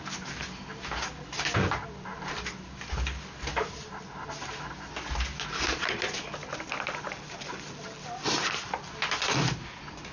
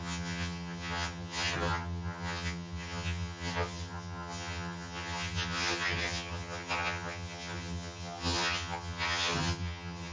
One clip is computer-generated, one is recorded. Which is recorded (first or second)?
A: first